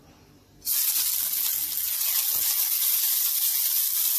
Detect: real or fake real